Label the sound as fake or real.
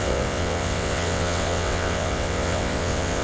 fake